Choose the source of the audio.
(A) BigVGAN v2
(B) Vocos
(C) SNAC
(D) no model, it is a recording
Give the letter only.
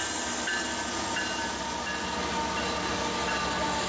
D